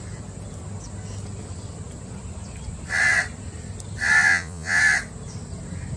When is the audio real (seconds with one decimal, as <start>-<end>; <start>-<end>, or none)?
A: 0.0-4.3; 4.8-6.0